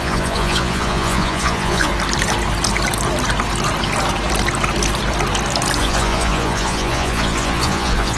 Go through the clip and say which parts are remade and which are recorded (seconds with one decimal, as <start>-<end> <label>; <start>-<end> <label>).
0.0-1.9 remade; 1.9-5.8 recorded; 5.8-8.2 remade